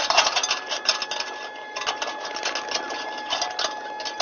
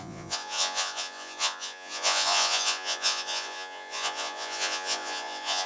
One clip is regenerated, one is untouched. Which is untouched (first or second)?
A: first